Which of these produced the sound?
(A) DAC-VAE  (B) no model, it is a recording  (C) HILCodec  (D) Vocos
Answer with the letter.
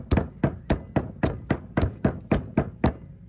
B